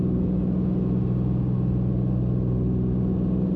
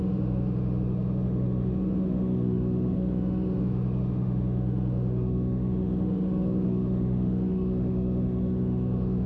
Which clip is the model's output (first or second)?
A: second